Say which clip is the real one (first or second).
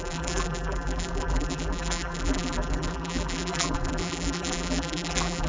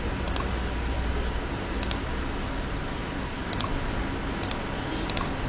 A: second